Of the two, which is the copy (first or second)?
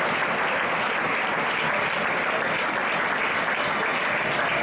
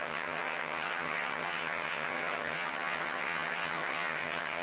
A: second